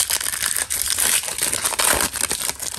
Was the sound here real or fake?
real